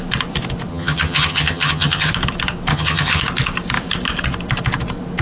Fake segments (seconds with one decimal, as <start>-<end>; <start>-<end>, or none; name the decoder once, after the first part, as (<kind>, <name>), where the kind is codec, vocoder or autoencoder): 0.7-2.1 (vocoder, HiFi-GAN); 2.7-3.2